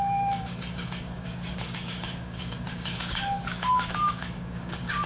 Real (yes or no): no